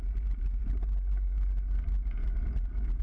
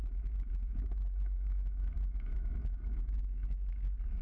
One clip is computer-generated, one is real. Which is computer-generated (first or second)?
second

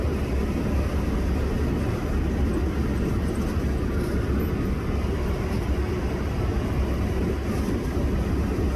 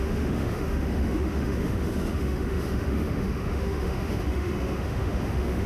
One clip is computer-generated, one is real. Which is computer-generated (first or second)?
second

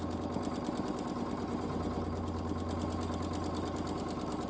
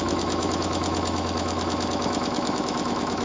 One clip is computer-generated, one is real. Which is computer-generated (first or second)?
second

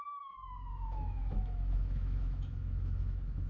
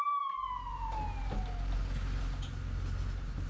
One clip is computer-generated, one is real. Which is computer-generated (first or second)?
first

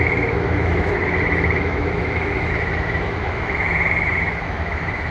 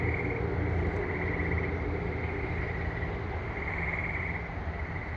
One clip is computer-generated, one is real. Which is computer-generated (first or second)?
first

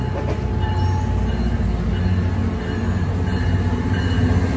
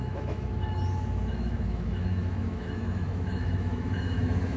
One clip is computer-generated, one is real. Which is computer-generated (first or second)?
second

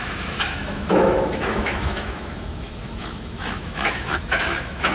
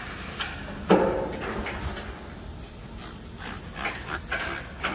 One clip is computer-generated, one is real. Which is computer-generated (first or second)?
first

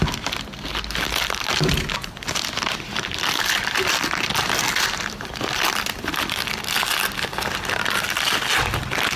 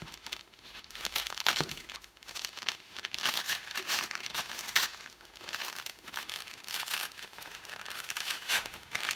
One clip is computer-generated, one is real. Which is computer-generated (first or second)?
second